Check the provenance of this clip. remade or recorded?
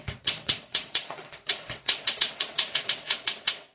remade